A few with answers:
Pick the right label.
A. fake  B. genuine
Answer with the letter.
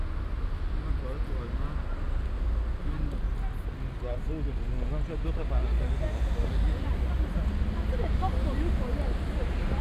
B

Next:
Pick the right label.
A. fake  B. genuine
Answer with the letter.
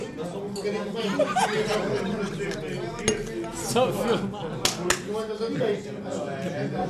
B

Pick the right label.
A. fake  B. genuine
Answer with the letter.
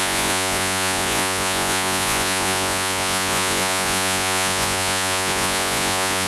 A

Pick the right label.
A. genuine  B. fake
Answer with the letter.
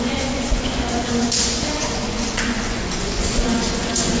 B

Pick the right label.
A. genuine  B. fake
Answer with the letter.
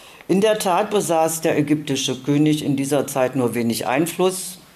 A